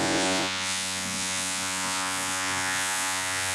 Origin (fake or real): fake